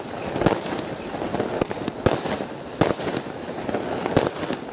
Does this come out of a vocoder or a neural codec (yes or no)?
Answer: no